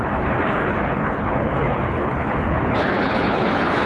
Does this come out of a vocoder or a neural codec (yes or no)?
yes